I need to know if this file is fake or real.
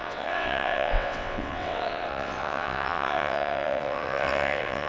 fake